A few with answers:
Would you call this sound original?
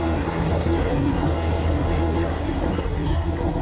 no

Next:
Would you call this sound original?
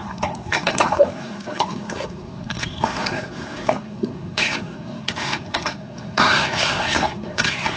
no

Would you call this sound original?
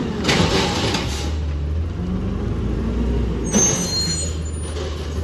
yes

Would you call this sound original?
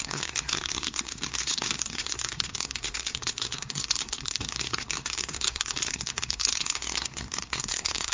no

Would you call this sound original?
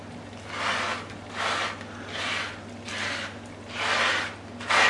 yes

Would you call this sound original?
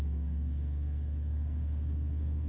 no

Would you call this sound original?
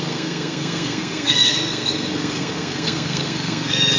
no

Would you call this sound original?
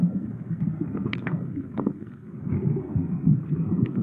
no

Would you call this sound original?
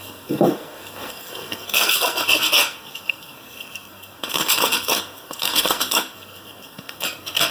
no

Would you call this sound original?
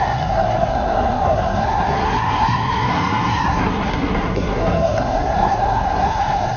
no